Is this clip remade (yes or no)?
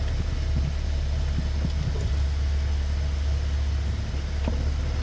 no